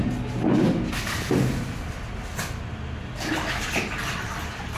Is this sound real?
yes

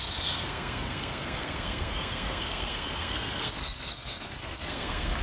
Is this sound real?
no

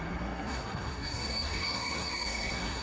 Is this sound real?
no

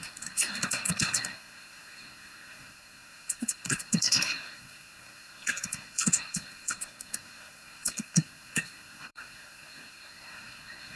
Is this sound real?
no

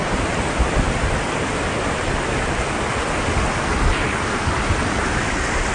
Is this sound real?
yes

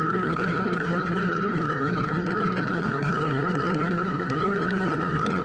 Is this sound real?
no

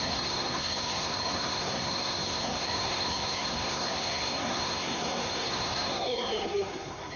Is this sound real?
no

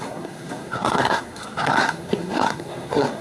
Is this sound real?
no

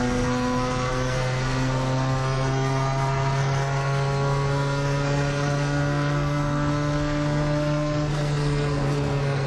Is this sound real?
no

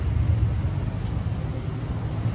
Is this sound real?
yes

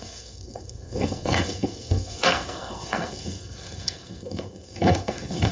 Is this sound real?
no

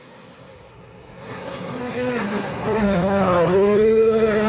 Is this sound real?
no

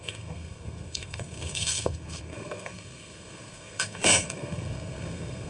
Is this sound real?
no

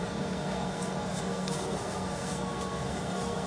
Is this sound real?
no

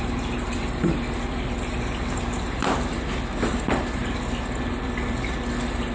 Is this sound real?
yes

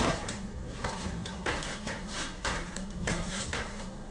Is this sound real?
no